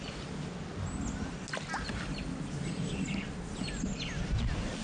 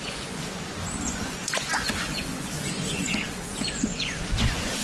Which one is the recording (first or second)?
first